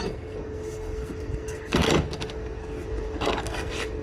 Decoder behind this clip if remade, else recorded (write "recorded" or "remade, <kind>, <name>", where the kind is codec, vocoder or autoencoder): remade, codec, SNAC